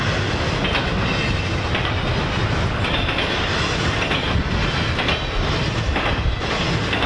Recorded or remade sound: recorded